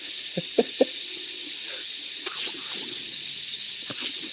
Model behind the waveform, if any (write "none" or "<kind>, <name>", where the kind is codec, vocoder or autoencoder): vocoder, Vocos